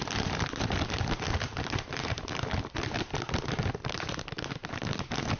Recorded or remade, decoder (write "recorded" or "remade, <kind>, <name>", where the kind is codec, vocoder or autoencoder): recorded